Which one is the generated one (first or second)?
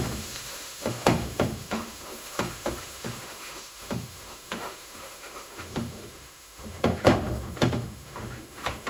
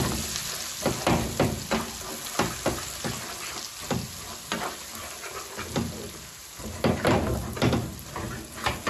first